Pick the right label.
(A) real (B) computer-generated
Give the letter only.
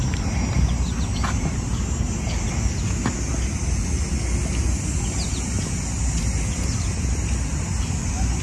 A